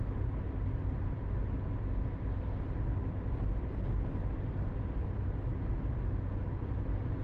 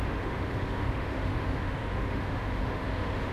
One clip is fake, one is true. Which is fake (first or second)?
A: second